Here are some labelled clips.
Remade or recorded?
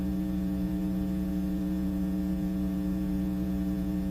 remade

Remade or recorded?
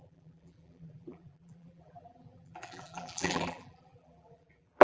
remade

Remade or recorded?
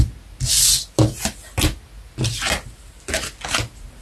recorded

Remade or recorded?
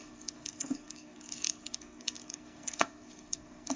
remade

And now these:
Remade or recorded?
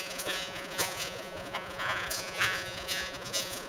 remade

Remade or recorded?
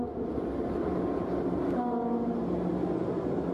recorded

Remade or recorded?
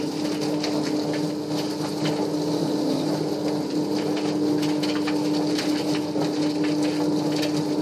recorded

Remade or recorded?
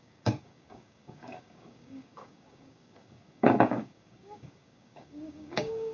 remade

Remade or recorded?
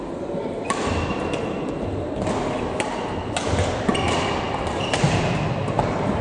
recorded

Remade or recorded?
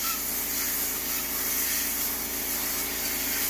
recorded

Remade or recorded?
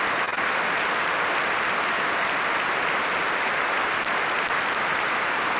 recorded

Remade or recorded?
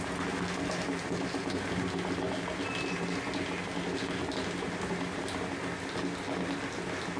recorded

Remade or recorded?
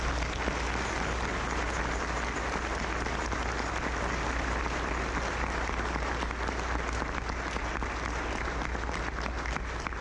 recorded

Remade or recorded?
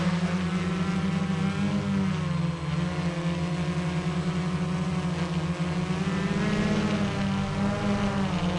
recorded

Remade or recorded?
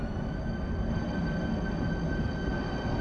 recorded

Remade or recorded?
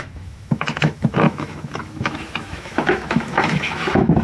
remade